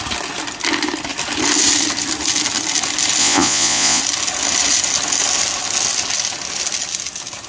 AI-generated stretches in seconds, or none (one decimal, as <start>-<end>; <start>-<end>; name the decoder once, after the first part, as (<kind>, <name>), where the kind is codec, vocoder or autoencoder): 3.2-4.0 (vocoder, Vocos)